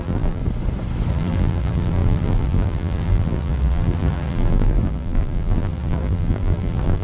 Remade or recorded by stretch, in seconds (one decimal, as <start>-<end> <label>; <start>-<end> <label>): 0.0-0.4 remade; 0.4-1.1 recorded; 1.1-7.0 remade